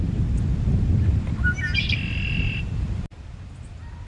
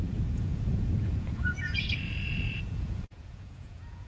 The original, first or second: first